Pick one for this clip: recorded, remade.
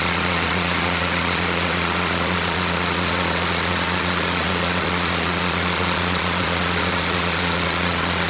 remade